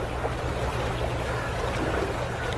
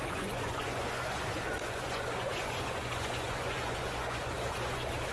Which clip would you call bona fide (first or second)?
first